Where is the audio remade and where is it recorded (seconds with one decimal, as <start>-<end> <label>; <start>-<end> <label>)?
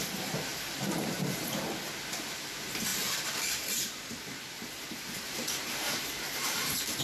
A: 0.0-7.0 remade